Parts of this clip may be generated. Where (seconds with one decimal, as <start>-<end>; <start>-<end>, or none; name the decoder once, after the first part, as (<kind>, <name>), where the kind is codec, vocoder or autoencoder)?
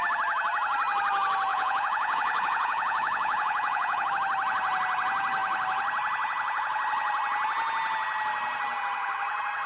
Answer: 1.5-4.1 (vocoder, Vocos)